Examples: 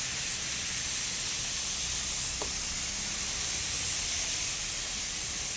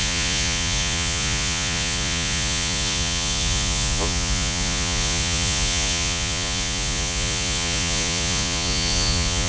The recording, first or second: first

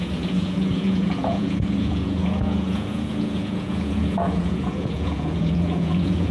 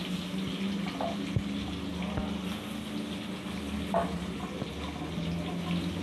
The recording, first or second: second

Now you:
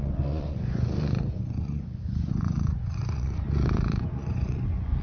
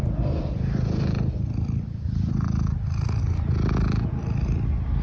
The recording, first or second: second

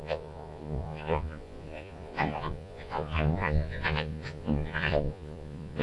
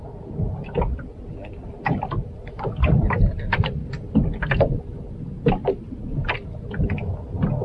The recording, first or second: second